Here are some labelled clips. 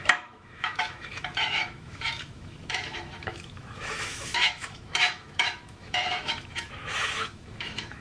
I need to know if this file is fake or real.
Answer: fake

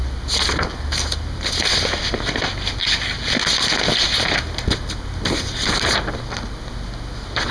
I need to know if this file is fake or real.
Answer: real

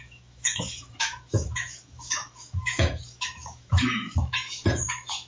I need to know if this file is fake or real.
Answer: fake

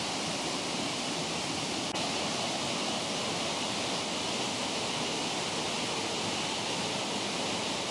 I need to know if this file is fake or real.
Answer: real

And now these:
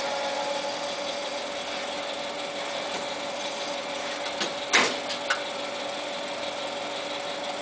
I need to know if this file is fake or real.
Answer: real